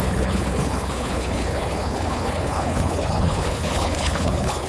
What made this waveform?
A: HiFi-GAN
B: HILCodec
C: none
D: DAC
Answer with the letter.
B